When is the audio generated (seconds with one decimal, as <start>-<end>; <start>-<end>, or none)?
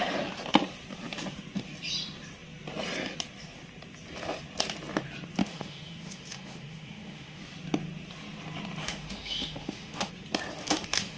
5.4-7.4; 8.8-10.1; 10.6-11.2